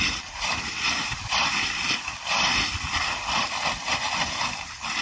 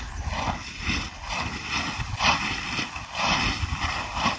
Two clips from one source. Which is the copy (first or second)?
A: first